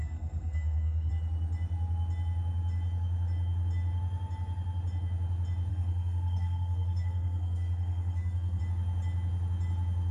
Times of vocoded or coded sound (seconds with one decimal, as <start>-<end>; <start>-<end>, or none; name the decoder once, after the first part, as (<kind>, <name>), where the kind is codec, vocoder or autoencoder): 0.0-1.1 (codec, SNAC); 5.7-8.6